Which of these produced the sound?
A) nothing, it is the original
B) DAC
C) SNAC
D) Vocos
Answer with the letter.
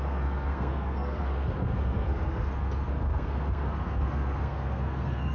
C